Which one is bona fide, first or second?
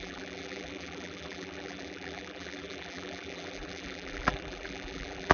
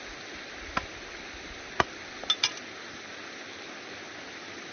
second